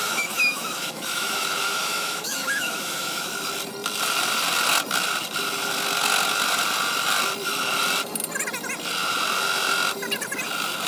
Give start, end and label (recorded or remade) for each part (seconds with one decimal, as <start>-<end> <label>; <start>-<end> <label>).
0.0-3.3 remade; 3.3-10.9 recorded